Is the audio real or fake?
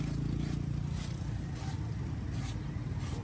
real